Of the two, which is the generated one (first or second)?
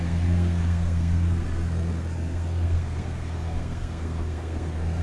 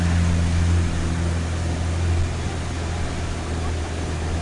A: first